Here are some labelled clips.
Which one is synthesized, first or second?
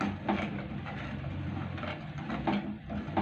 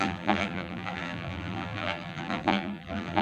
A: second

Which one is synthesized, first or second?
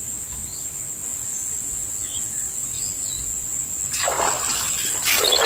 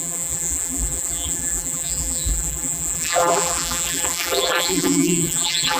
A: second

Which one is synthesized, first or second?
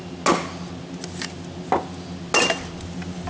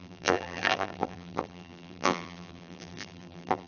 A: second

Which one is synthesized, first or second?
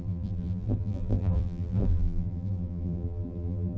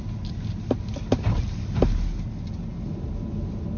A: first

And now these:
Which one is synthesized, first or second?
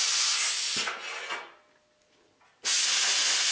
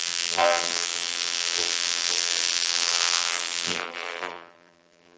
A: second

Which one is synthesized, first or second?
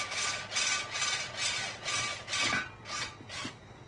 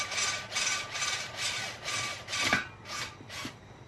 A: second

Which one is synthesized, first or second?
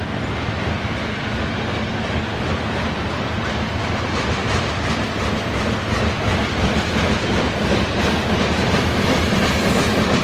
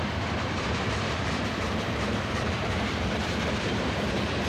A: second